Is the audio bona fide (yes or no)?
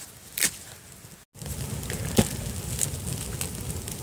yes